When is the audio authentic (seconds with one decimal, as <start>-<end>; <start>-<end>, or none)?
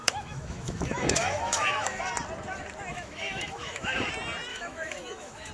2.0-2.9; 4.1-4.5